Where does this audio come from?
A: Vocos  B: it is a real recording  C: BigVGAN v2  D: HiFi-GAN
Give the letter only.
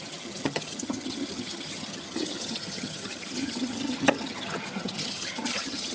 D